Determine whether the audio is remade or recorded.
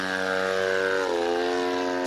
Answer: recorded